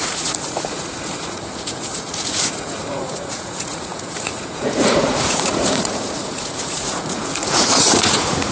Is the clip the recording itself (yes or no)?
no